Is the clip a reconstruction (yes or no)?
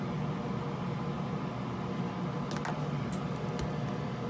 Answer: no